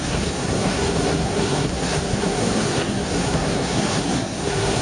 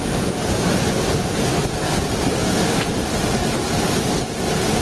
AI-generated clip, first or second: first